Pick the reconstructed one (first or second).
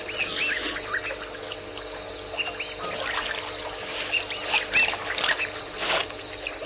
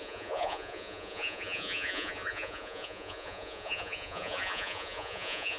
second